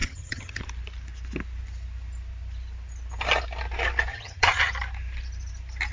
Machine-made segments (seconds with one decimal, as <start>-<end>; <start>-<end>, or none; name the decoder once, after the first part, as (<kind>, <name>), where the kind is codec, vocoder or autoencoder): 0.0-0.6 (vocoder, HiFi-GAN); 4.1-4.7